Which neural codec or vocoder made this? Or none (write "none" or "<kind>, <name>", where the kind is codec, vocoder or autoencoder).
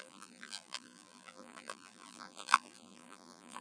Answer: vocoder, BigVGAN v2